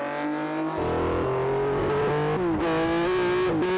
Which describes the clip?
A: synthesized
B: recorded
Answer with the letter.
B